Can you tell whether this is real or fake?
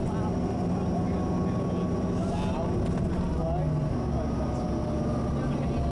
real